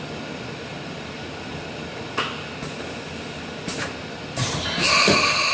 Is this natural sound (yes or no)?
yes